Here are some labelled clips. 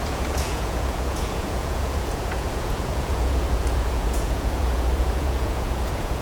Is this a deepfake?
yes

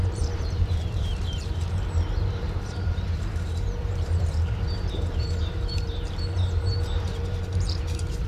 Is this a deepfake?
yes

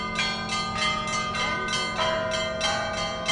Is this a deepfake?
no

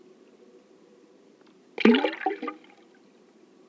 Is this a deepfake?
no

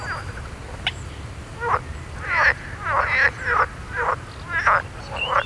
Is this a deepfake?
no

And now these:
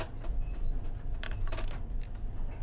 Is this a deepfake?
no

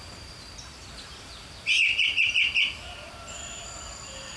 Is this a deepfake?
yes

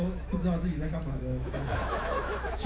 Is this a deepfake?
yes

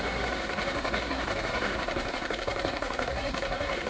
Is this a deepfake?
yes